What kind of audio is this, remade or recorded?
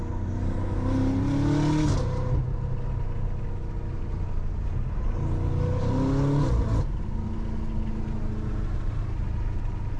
recorded